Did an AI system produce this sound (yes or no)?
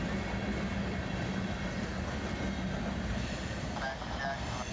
no